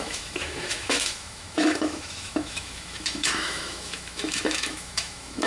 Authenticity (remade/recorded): remade